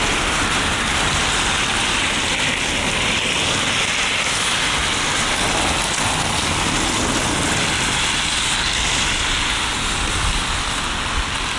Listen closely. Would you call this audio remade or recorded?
recorded